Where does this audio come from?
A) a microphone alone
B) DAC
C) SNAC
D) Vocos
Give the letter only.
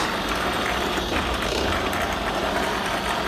A